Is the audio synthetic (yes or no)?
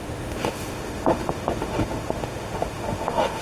yes